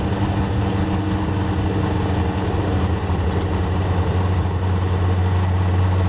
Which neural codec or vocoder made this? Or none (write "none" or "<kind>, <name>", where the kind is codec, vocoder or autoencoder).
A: none